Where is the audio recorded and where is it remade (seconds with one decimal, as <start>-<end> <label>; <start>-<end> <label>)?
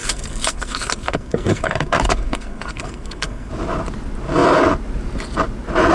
0.0-3.5 remade; 3.5-5.9 recorded